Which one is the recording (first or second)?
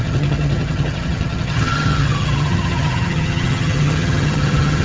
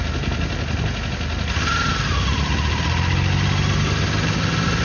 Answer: second